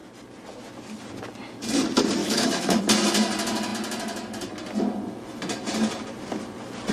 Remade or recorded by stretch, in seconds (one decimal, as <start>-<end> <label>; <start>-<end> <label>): 0.0-2.2 recorded; 2.2-2.8 remade; 2.8-6.9 recorded